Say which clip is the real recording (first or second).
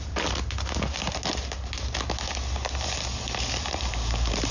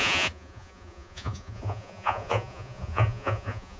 first